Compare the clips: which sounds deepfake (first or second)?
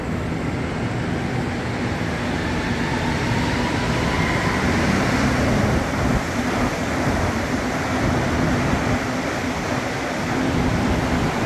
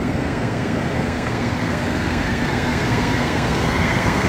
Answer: second